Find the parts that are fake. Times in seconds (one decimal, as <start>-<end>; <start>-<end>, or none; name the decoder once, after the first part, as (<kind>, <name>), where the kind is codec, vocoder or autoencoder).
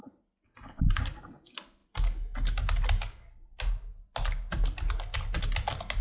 none